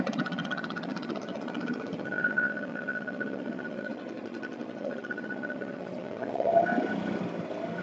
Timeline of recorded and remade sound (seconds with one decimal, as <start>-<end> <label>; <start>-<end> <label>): 0.0-6.5 remade; 6.5-7.8 recorded